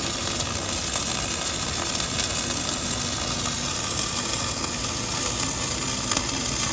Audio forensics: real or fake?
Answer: real